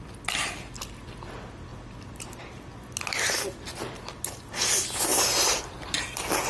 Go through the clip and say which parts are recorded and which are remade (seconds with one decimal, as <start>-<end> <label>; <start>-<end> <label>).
0.0-1.7 recorded; 1.7-2.4 remade; 2.4-5.1 recorded; 5.1-6.5 remade